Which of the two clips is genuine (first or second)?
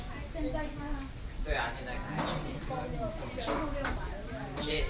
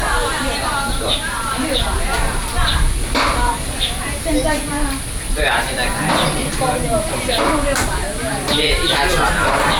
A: first